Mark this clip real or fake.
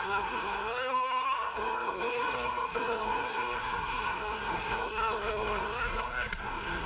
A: fake